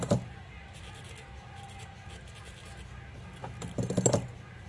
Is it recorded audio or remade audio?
recorded